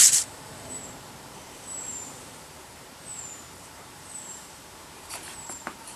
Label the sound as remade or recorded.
remade